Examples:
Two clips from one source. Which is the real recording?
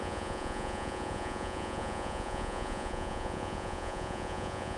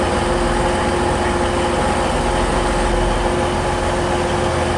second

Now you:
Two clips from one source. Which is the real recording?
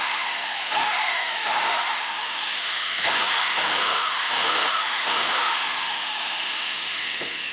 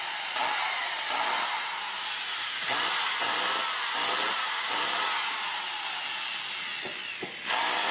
second